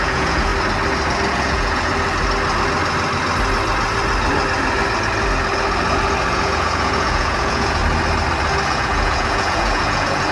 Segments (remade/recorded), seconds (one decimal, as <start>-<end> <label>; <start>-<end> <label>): 0.0-0.5 remade; 0.5-1.3 recorded; 1.3-1.9 remade; 1.9-6.3 recorded; 6.3-7.8 remade; 7.8-8.7 recorded; 8.7-10.3 remade